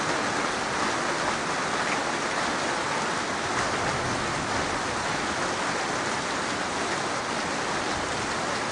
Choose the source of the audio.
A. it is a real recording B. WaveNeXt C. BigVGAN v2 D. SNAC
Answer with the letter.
A